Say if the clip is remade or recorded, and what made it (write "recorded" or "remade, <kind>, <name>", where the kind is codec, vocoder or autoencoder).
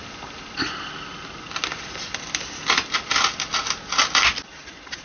recorded